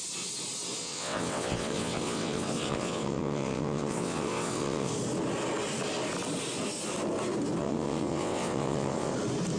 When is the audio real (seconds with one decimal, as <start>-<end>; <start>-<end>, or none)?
0.0-0.8; 4.9-7.6; 9.1-9.6